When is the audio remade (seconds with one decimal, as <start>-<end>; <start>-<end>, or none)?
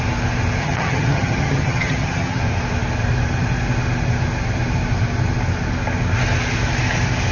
0.6-2.4